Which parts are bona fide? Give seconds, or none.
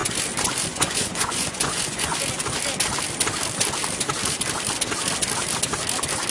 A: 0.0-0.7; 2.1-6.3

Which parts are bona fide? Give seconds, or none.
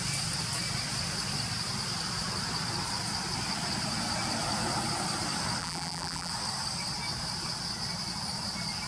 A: 0.0-5.6; 6.3-8.9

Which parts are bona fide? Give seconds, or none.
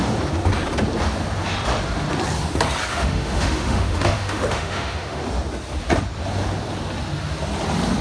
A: 0.0-2.9; 5.2-8.0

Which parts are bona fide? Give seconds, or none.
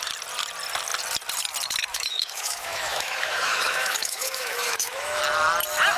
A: 0.0-1.9; 5.2-6.0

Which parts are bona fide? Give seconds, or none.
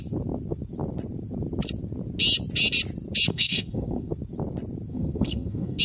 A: 0.0-3.3; 4.1-4.9